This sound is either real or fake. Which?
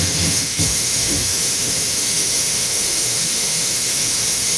fake